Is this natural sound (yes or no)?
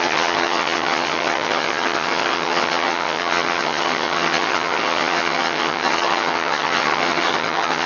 no